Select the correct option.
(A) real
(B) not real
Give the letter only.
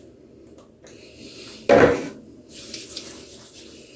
A